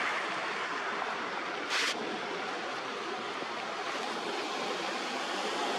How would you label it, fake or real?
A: real